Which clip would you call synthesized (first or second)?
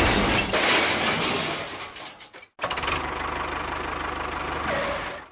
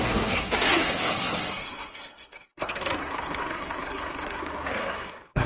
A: second